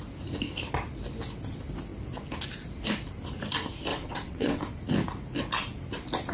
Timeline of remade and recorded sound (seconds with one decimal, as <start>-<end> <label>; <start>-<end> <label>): 0.0-3.9 recorded; 3.9-4.6 remade; 4.6-6.3 recorded